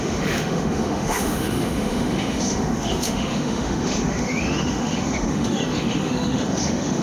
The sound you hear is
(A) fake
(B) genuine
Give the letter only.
A